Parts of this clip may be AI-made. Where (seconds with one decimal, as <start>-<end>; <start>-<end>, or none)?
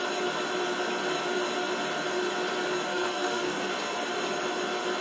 2.9-3.7